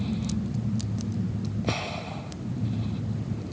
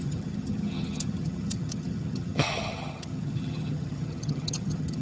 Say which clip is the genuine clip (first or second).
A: first